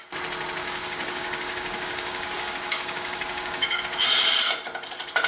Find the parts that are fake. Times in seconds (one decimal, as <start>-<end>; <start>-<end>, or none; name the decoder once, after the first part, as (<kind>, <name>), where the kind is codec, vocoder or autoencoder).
0.6-3.8 (codec, DAC)